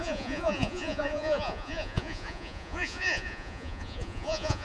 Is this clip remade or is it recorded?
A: remade